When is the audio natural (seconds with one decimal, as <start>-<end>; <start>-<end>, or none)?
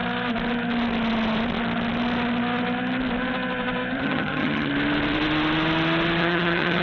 0.0-4.0; 4.7-6.2